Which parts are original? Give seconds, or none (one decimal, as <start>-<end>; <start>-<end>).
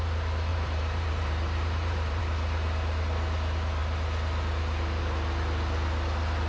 0.0-0.5; 2.2-6.5